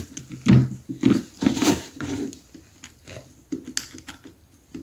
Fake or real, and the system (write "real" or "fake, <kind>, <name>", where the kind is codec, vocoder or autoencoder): real